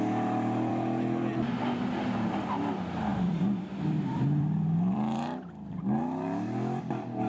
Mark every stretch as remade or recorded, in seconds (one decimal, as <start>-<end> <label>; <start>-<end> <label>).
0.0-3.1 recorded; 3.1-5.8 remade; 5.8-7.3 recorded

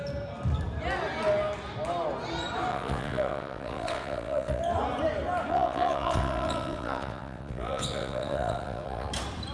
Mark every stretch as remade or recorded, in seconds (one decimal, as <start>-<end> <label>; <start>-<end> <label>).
0.0-2.7 recorded; 2.7-4.6 remade; 4.6-5.5 recorded; 5.5-9.1 remade; 9.1-9.5 recorded

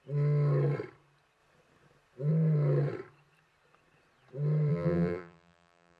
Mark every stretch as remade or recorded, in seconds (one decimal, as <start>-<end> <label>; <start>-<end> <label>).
0.0-4.7 recorded; 4.7-6.0 remade

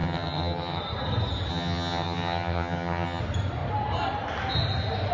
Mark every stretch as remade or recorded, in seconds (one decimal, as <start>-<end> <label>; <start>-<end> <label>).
0.0-0.8 remade; 0.8-1.5 recorded; 1.5-3.2 remade; 3.2-5.1 recorded

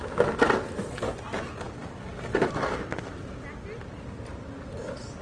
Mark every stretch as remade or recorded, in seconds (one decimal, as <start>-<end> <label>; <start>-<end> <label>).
0.0-5.2 recorded

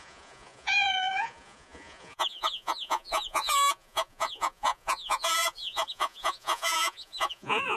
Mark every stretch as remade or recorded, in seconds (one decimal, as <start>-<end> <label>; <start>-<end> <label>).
0.0-7.8 remade

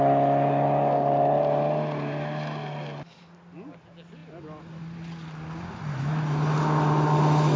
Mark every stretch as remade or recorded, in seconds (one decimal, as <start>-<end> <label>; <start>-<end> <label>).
0.0-7.6 recorded